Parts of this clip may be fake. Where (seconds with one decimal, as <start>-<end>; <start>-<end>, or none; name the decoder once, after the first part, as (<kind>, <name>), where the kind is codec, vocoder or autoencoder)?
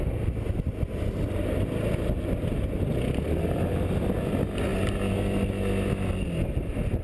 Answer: none